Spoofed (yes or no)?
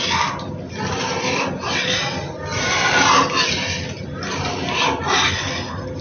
no